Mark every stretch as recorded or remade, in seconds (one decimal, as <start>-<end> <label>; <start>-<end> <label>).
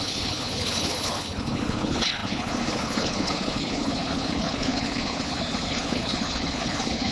0.0-7.1 remade